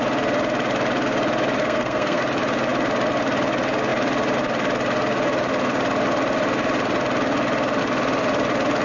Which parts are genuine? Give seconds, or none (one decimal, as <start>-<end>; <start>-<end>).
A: 0.0-1.6; 2.2-8.8